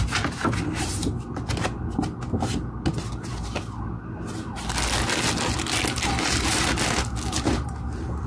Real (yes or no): yes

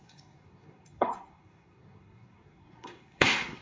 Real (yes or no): no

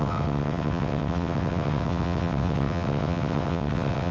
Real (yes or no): no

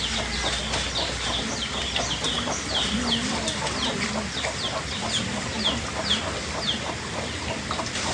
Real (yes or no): yes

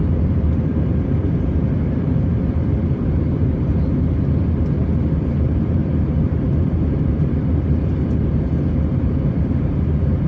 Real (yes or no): no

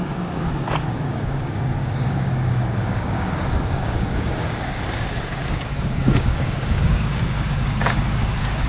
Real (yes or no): no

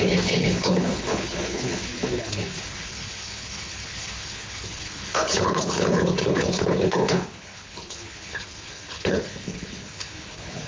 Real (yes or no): no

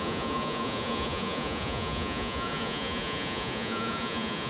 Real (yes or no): no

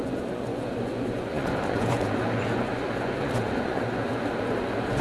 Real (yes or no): no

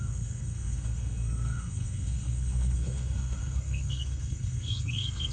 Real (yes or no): no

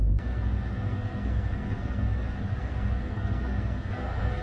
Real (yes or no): no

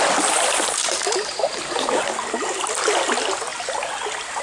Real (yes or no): yes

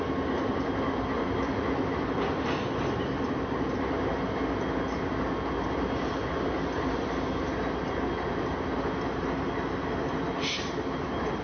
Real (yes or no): yes